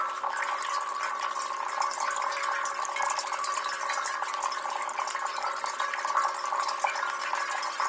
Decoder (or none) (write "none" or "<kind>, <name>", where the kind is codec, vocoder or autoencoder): none